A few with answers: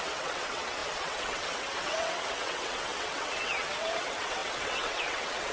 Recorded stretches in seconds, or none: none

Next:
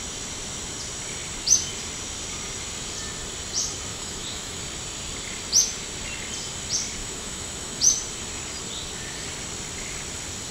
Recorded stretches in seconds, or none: 0.0-3.9; 4.6-7.0; 7.8-10.5

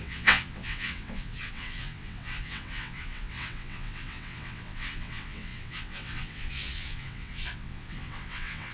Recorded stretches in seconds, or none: none

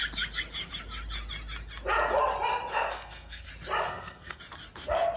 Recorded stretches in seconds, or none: 0.0-2.7; 3.5-3.9; 4.4-5.2

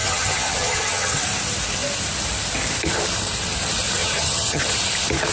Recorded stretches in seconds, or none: 1.2-4.0; 4.6-5.3